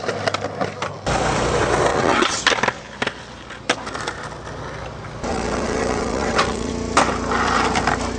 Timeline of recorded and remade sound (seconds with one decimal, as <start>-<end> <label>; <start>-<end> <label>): 0.0-1.9 recorded; 1.9-2.4 remade; 2.4-5.3 recorded; 5.3-6.7 remade; 6.7-8.2 recorded

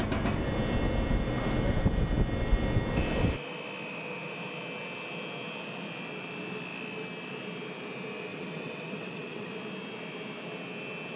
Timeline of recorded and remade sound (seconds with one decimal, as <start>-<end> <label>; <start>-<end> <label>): 0.0-8.3 recorded; 8.3-9.5 remade; 9.5-11.2 recorded

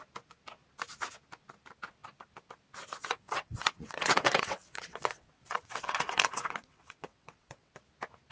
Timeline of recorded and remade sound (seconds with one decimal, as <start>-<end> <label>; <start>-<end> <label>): 0.0-3.0 recorded; 3.0-7.7 remade; 7.7-8.3 recorded

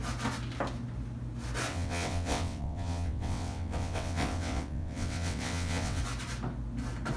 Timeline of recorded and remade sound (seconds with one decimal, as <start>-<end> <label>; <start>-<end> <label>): 0.0-1.7 recorded; 1.7-6.0 remade; 6.0-7.2 recorded

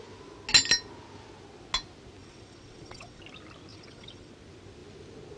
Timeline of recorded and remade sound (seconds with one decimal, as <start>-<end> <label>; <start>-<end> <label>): 0.0-2.2 recorded; 2.2-3.2 remade; 3.2-3.7 recorded; 3.7-4.3 remade; 4.3-5.4 recorded

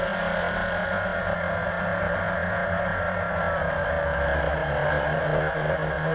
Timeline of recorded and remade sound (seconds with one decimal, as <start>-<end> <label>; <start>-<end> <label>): 0.0-6.1 recorded

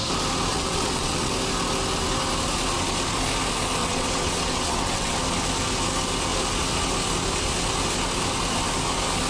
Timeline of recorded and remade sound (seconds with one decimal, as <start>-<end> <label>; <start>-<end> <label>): 0.0-0.5 recorded; 0.5-1.3 remade; 1.3-3.8 recorded; 3.8-5.2 remade; 5.2-9.3 recorded